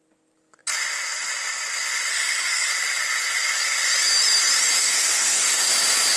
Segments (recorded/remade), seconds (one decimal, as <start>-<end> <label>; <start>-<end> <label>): 0.0-2.1 recorded; 2.1-2.7 remade; 2.7-4.8 recorded; 4.8-5.7 remade; 5.7-6.2 recorded